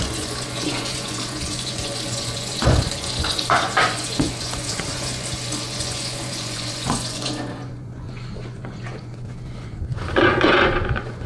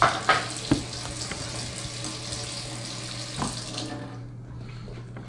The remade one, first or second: first